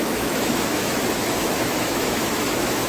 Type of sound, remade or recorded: remade